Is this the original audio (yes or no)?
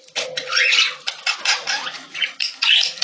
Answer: no